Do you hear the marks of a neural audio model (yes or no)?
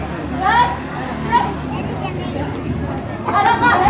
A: no